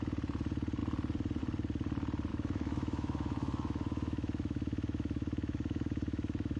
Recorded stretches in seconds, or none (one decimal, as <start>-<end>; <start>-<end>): 0.0-2.3